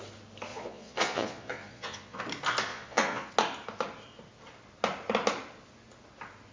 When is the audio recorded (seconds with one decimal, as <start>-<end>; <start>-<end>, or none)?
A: 0.0-0.5; 2.2-2.7; 3.3-6.5